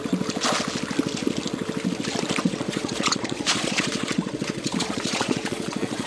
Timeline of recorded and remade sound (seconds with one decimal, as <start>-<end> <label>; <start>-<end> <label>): 0.0-2.4 recorded; 2.4-6.1 remade